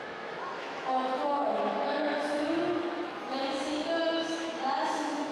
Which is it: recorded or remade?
remade